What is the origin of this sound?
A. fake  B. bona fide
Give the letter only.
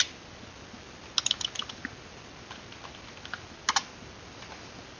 B